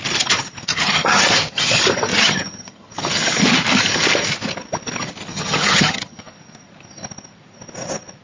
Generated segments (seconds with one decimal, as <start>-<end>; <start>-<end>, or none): 0.7-1.7; 2.1-2.9; 5.3-6.2